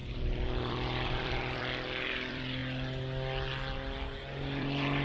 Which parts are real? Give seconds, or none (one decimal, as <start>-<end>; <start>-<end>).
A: 2.6-4.6